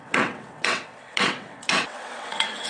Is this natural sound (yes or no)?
no